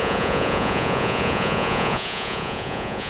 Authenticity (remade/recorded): remade